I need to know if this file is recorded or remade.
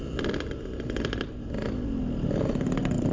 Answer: recorded